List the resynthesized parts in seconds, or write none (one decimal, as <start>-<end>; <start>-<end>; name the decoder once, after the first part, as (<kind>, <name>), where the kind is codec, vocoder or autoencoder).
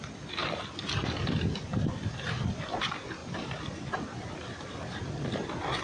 3.2-5.0 (vocoder, BigVGAN v2)